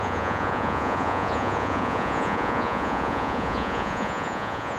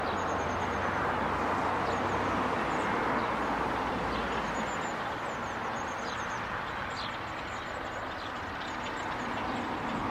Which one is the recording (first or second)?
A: second